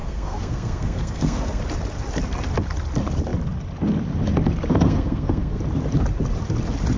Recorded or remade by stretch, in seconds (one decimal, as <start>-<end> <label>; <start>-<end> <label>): 0.0-1.6 remade; 1.6-4.7 recorded; 4.7-5.6 remade; 5.6-7.0 recorded